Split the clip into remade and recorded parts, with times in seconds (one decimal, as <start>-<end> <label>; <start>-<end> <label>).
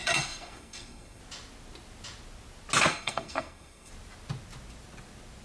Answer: 0.0-1.2 remade; 1.2-2.9 recorded; 2.9-3.9 remade; 3.9-5.4 recorded